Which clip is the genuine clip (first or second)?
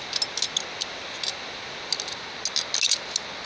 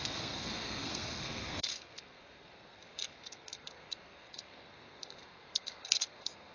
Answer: first